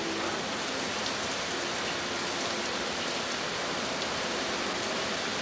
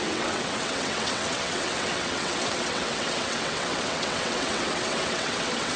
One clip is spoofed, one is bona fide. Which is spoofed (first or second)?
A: second